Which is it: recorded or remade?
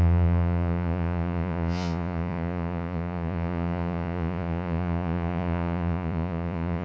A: remade